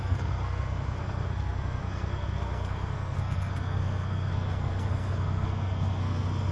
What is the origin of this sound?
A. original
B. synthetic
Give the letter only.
B